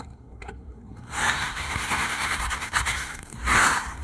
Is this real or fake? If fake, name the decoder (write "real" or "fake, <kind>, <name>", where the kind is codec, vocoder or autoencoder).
fake, codec, SNAC